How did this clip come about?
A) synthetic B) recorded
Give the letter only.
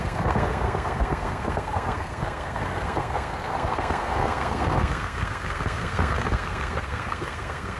A